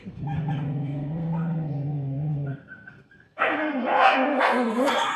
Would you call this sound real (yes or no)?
no